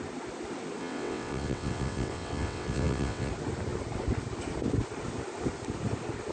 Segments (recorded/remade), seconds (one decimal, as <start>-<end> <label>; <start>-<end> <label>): 0.0-0.8 recorded; 0.8-3.3 remade; 3.3-6.3 recorded

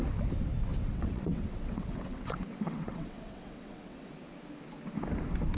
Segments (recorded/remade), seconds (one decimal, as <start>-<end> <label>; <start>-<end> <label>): 0.0-0.7 recorded; 0.7-4.1 remade; 4.1-5.6 recorded

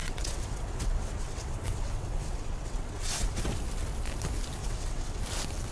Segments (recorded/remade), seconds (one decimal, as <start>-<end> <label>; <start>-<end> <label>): 0.0-3.4 remade; 3.4-4.6 recorded; 4.6-5.2 remade; 5.2-5.7 recorded

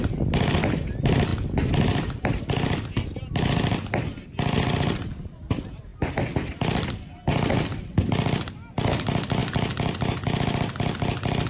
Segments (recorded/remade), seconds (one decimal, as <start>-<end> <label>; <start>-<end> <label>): 0.0-11.5 recorded

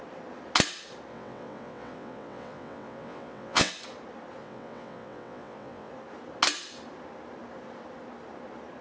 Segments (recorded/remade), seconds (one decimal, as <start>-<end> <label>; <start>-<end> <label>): 0.0-1.1 recorded; 1.1-3.7 remade; 3.7-4.4 recorded; 4.4-5.9 remade; 5.9-8.8 recorded

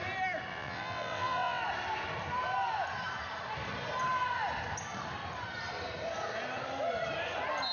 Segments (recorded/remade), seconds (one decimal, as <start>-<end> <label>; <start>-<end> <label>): 0.0-0.5 recorded; 0.5-1.6 remade; 1.6-7.7 recorded